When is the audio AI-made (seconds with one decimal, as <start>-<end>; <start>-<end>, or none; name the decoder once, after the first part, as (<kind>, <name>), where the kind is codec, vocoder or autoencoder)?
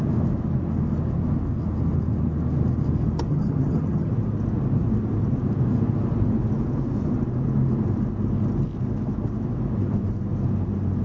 3.3-4.1 (vocoder, HiFi-GAN)